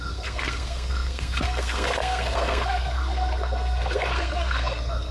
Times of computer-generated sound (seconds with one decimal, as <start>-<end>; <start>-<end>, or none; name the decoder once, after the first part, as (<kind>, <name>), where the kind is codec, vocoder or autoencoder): 0.0-5.1 (codec, SNAC)

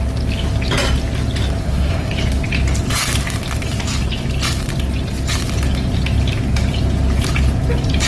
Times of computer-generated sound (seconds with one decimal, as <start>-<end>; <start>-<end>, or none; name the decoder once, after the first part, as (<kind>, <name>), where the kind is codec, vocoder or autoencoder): 1.6-2.1 (codec, SNAC)

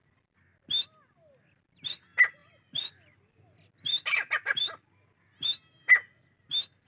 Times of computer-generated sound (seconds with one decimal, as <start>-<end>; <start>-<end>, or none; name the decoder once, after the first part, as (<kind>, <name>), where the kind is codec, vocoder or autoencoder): none

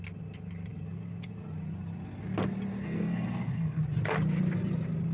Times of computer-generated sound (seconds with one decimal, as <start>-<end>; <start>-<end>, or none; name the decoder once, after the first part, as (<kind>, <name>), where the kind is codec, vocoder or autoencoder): 2.8-3.8 (codec, SNAC)

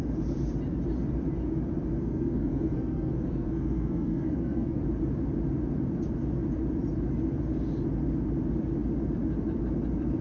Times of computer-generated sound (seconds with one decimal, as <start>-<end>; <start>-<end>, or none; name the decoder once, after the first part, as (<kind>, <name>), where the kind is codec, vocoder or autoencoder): 2.0-4.8 (codec, SNAC)